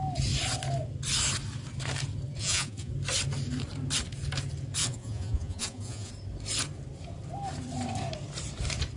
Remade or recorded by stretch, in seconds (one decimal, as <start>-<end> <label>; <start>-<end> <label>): 0.0-2.3 recorded; 2.3-2.9 remade; 2.9-4.8 recorded; 4.8-6.1 remade; 6.1-9.0 recorded

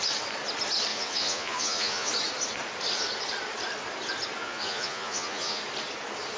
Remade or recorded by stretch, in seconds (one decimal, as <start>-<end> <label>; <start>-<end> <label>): 0.0-0.9 recorded; 0.9-2.1 remade; 2.1-4.4 recorded; 4.4-5.6 remade; 5.6-6.4 recorded

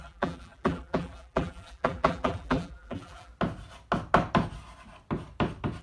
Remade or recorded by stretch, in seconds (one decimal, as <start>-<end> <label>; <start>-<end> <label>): 0.0-3.3 remade; 3.3-5.8 recorded

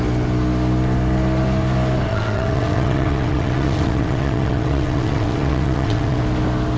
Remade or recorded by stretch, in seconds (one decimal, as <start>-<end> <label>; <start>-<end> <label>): 0.0-2.1 recorded; 2.1-6.2 remade; 6.2-6.8 recorded

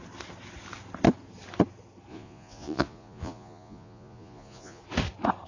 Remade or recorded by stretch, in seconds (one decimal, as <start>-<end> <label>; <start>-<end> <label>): 0.0-2.1 recorded; 2.1-4.8 remade; 4.8-5.5 recorded

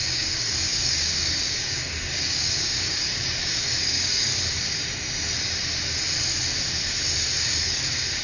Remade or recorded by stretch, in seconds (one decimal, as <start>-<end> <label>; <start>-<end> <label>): 0.0-4.3 remade; 4.3-7.0 recorded; 7.0-8.2 remade